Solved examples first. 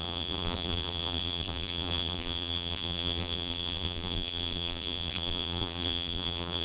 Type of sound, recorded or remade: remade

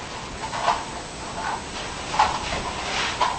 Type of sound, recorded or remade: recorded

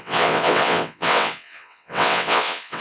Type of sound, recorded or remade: remade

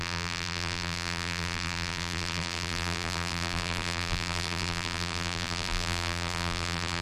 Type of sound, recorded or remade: remade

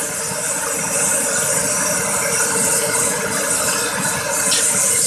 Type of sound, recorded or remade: recorded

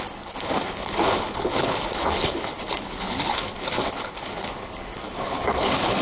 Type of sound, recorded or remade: remade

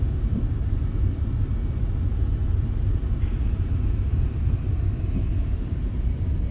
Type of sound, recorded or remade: recorded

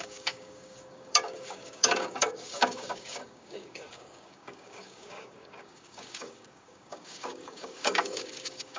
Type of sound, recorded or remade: remade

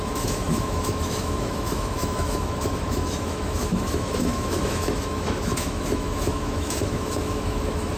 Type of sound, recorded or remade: remade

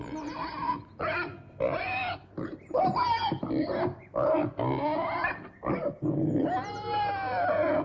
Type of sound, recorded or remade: recorded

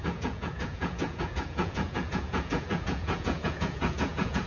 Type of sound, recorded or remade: remade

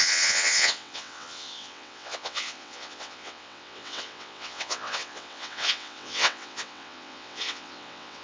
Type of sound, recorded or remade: remade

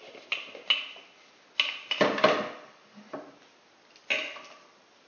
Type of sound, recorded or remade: recorded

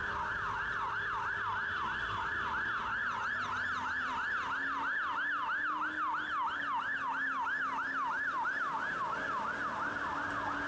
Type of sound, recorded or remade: recorded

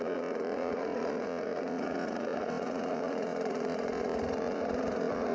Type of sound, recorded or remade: remade